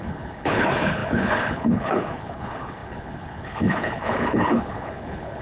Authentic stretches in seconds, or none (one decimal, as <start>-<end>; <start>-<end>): none